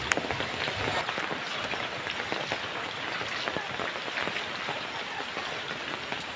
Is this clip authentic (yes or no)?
yes